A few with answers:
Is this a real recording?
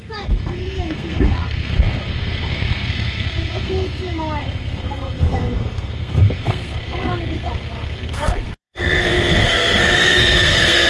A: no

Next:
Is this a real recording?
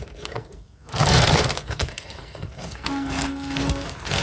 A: no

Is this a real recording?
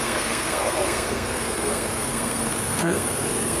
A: no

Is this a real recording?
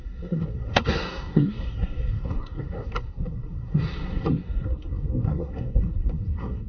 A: no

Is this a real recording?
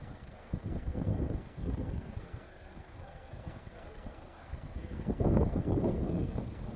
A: no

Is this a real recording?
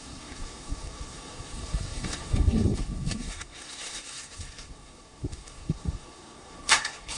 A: no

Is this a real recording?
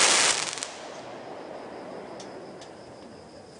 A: yes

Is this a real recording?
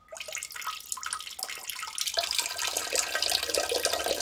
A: yes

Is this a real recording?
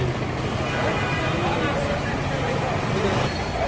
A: yes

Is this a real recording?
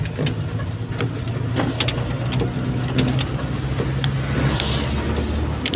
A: yes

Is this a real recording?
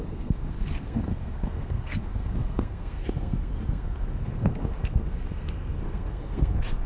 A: no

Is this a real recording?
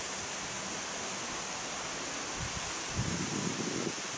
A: yes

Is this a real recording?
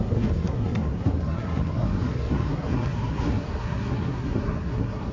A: no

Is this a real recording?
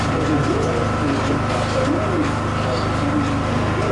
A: yes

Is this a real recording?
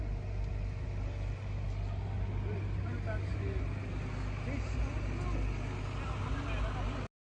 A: yes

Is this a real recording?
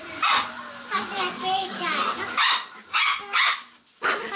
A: yes